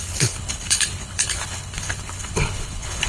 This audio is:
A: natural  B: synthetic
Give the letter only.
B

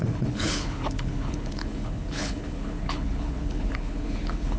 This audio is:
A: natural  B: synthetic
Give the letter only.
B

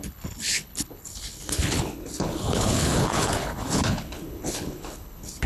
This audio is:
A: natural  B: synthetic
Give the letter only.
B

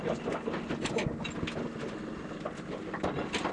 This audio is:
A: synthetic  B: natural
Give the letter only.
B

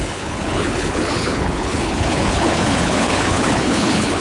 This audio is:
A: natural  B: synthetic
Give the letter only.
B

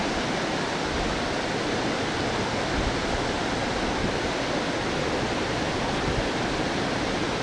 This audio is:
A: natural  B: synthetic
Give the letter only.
A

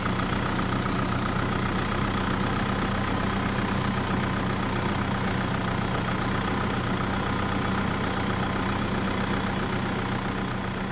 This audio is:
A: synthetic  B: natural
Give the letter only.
B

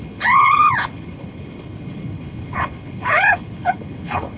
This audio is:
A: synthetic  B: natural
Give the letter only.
A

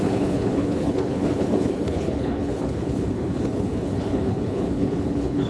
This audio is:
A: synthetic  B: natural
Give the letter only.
A